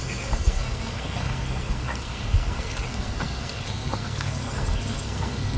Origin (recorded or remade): remade